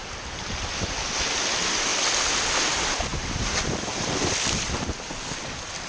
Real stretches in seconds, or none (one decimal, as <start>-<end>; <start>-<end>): 0.8-3.1; 5.1-5.9